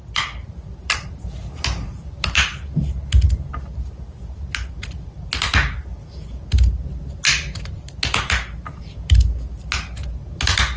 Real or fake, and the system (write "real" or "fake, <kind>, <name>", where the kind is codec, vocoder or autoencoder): real